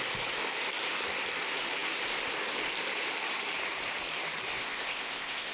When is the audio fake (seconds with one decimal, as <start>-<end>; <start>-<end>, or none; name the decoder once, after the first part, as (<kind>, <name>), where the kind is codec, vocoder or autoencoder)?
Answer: 4.6-5.5 (codec, ZipCodec)

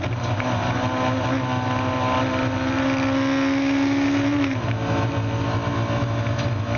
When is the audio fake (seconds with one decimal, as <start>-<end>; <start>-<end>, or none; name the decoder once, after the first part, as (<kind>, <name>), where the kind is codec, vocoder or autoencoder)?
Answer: none

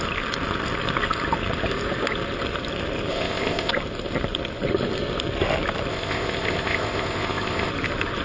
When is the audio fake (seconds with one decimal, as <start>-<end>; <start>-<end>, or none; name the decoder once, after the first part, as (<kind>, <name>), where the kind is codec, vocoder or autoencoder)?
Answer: 3.1-3.7 (codec, ZipCodec); 5.9-7.7

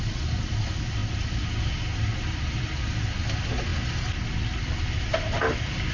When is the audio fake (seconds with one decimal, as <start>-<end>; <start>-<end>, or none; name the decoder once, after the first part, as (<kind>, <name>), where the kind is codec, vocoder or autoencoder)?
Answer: none

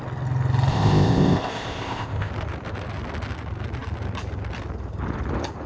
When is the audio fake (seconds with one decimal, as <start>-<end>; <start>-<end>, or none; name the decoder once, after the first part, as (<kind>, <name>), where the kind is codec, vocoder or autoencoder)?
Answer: 0.7-2.3 (codec, ZipCodec)

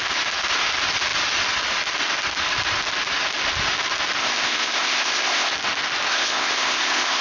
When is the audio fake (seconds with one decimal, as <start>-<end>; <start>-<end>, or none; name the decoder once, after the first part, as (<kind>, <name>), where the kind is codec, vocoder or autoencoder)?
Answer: 4.2-5.5 (codec, ZipCodec); 6.1-7.2

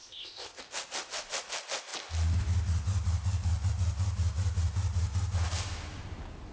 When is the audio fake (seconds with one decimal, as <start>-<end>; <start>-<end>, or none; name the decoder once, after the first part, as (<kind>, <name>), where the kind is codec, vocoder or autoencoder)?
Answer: 0.0-0.6 (codec, ZipCodec)

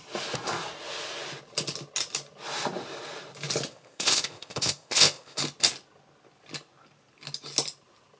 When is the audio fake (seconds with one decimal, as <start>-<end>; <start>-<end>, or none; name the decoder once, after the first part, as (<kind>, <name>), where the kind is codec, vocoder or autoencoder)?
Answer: 3.7-5.4 (codec, ZipCodec)